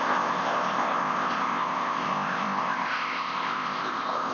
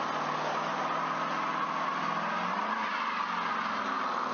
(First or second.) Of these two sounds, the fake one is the first